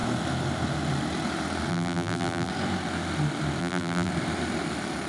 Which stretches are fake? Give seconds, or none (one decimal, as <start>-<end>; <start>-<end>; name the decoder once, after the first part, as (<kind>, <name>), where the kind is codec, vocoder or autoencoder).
1.7-2.5 (vocoder, BigVGAN v2); 3.6-4.1

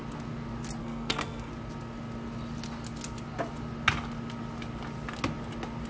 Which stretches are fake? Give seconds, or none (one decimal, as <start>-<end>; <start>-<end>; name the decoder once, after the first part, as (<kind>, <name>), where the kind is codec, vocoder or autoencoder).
0.8-1.5 (codec, SNAC)

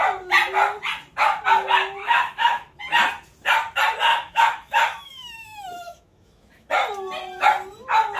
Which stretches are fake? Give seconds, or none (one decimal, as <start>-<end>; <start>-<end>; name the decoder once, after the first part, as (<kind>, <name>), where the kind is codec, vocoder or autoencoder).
2.0-2.8 (autoencoder, DAC-VAE); 4.1-6.7